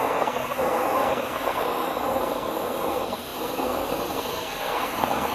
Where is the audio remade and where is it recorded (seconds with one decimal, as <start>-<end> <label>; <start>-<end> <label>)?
0.0-5.3 remade